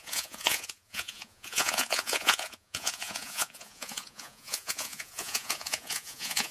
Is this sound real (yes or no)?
no